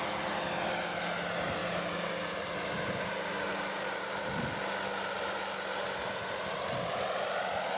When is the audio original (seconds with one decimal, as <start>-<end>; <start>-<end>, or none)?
0.0-7.8